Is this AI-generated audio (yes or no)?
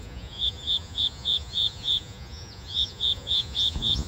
yes